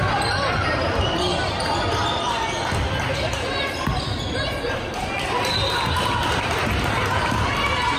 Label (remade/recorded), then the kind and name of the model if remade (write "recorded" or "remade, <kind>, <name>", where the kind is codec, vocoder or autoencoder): recorded